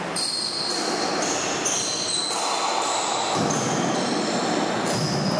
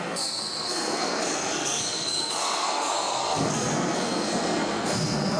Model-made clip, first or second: second